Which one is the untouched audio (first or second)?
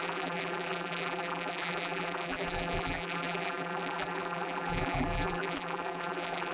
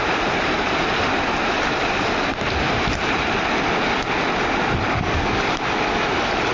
second